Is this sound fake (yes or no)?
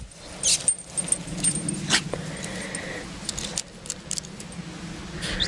no